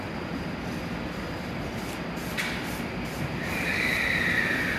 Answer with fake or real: fake